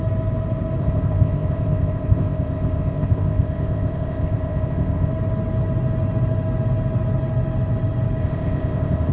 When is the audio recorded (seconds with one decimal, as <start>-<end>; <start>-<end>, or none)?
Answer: 0.0-0.8; 5.1-8.2